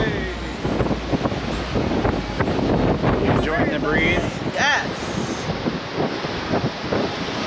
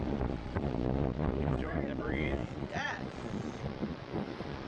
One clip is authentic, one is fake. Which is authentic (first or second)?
first